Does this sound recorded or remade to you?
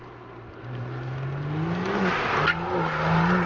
recorded